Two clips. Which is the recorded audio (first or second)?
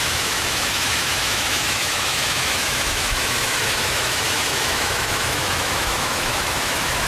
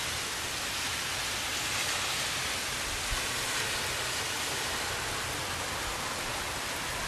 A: second